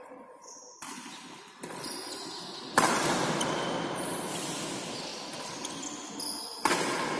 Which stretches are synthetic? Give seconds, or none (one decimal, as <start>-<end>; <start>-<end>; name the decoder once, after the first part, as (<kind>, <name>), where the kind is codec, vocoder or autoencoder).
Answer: none